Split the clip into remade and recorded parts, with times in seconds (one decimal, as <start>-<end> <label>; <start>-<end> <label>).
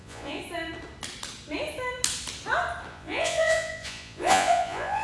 0.0-0.4 remade; 0.4-2.9 recorded; 2.9-5.0 remade